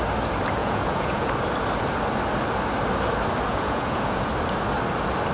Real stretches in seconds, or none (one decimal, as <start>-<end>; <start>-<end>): 0.0-0.6; 1.3-3.5; 4.3-5.3